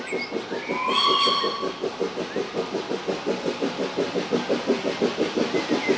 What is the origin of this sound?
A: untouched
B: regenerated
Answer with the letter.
A